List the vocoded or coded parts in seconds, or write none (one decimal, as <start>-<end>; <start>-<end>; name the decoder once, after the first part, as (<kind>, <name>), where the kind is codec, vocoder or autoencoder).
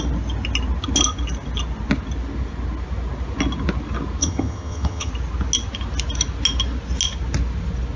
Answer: 4.2-5.1 (vocoder, HiFi-GAN)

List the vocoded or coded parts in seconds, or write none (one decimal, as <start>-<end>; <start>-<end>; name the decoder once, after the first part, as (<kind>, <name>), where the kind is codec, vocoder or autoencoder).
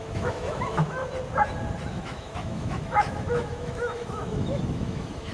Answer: 0.0-1.0 (autoencoder, DAC-VAE); 1.9-5.3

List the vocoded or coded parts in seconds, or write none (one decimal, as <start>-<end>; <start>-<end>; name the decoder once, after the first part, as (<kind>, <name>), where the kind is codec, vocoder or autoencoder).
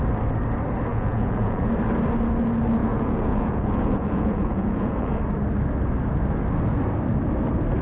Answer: 0.9-1.7 (vocoder, Vocos); 2.8-5.2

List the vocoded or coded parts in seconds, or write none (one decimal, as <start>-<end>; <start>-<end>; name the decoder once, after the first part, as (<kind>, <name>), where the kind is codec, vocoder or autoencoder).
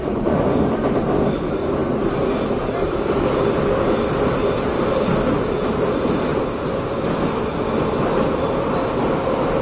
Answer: 0.0-0.6 (vocoder, Vocos)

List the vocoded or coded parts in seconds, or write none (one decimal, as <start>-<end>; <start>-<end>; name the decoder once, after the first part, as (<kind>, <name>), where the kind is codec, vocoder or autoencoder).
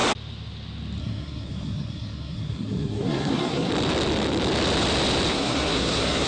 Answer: 1.0-3.7 (codec, SNAC); 5.3-6.3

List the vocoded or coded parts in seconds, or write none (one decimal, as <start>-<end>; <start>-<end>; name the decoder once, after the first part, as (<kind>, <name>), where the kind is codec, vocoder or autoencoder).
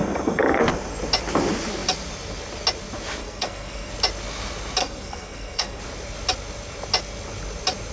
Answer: 0.0-0.6 (codec, SNAC); 3.2-3.9; 4.8-5.8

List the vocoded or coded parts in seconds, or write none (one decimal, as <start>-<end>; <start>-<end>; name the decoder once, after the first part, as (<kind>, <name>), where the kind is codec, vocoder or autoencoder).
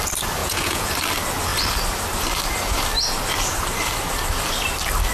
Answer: 0.4-0.9 (vocoder, Vocos)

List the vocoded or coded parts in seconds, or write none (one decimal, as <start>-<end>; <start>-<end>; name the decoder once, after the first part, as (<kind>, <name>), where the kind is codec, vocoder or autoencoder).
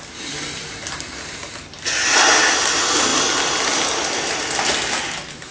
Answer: none